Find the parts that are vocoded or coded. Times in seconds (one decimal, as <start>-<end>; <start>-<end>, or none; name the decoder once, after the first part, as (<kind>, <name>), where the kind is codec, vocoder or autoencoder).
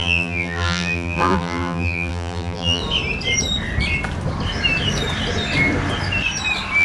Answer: 0.0-2.8 (vocoder, BigVGAN v2)